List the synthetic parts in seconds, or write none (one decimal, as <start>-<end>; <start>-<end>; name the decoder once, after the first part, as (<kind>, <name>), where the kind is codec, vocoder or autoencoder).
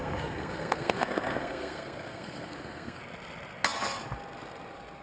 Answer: 0.0-3.0 (codec, SNAC)